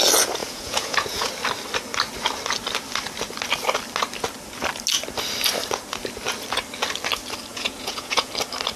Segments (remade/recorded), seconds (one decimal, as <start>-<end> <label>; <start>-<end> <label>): 0.0-0.4 recorded; 0.4-1.3 remade; 1.3-7.5 recorded; 7.5-8.3 remade; 8.3-8.8 recorded